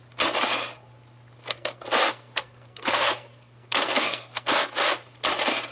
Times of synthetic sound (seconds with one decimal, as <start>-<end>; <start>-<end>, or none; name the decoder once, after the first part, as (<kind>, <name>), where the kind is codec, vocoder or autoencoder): 1.4-4.8 (codec, SNAC)